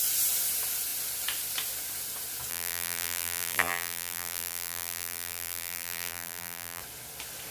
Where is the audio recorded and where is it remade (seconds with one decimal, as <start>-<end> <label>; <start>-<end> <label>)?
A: 0.0-2.5 recorded; 2.5-6.8 remade; 6.8-7.5 recorded